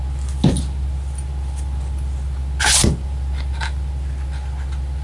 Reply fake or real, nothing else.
real